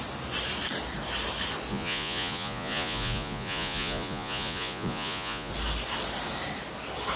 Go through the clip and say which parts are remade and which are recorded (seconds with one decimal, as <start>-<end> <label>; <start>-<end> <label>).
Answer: 0.0-1.7 recorded; 1.7-5.5 remade; 5.5-7.2 recorded